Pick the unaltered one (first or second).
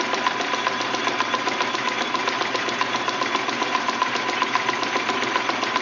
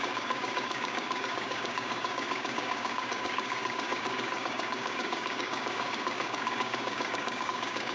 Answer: first